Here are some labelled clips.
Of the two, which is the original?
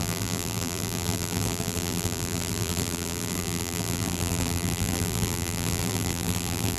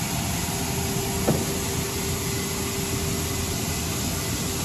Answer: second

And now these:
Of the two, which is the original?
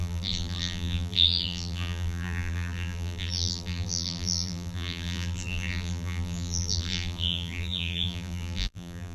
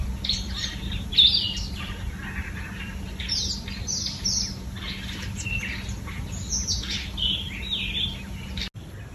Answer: second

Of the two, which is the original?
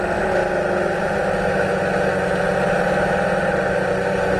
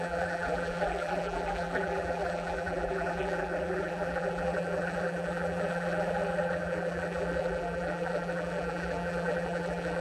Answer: first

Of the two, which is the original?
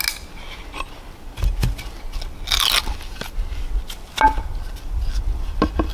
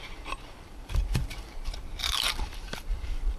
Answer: first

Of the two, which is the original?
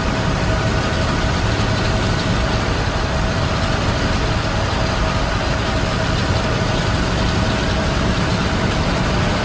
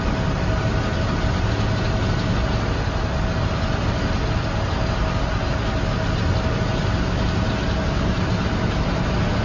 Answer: second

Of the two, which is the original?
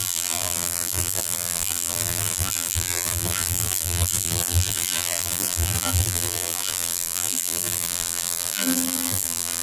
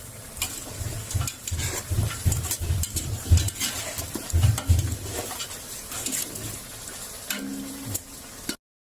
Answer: second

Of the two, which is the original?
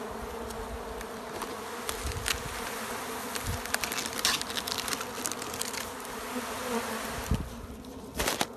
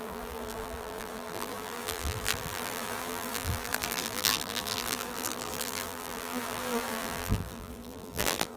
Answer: first